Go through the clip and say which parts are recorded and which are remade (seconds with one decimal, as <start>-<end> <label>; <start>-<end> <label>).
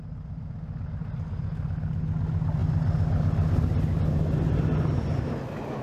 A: 0.0-5.8 recorded